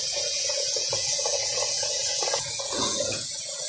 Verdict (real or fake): fake